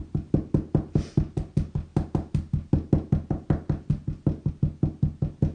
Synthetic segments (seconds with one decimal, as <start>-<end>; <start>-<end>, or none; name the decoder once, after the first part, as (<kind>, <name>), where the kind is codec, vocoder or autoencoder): none

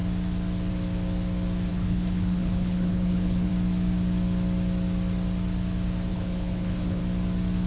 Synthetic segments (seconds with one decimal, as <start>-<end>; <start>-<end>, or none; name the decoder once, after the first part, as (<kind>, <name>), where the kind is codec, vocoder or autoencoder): 1.7-3.5 (codec, HILCodec); 6.1-7.0

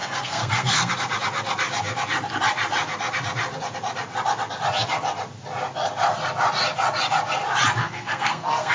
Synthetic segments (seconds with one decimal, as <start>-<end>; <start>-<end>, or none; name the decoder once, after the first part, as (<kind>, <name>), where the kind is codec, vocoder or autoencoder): 0.0-0.9 (codec, SNAC); 7.8-8.7

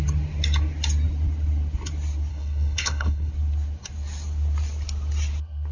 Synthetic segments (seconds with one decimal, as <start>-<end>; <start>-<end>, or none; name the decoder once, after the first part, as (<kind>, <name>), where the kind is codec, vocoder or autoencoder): 2.3-3.3 (codec, HILCodec)

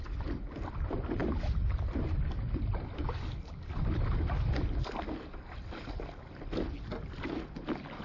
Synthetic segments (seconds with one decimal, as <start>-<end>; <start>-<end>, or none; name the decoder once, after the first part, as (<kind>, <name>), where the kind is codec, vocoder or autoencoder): none

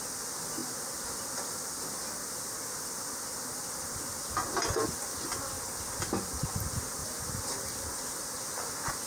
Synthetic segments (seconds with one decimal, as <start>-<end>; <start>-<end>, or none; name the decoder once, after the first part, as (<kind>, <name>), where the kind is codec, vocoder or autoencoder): none

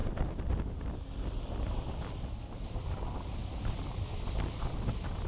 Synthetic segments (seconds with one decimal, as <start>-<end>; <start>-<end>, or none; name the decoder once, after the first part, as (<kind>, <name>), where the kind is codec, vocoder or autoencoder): none